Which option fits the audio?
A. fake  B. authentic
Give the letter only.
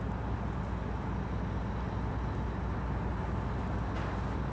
B